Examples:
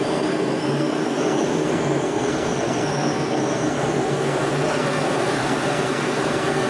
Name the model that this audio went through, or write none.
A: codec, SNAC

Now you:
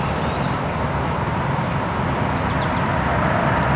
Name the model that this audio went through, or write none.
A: none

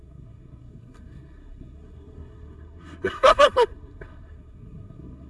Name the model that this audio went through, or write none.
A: codec, SNAC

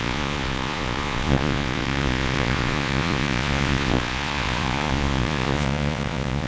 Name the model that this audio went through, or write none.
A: vocoder, Vocos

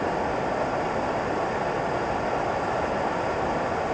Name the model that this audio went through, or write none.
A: none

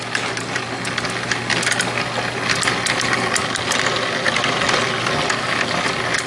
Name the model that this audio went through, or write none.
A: none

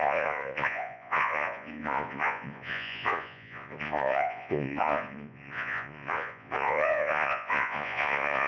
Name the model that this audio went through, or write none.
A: vocoder, Vocos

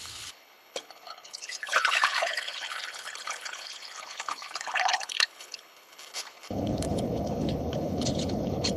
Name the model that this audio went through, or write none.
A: codec, HILCodec